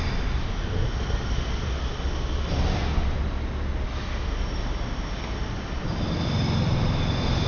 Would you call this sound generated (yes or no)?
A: no